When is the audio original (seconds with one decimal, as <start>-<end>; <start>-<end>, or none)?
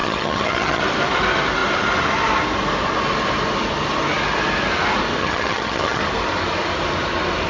0.8-5.2; 6.0-7.5